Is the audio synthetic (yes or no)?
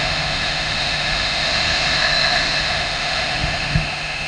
yes